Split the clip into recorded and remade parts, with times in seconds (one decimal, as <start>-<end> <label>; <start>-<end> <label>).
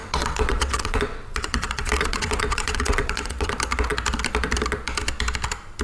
0.0-3.5 remade; 3.5-5.8 recorded